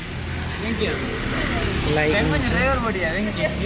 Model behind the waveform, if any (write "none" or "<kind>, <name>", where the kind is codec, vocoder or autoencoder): none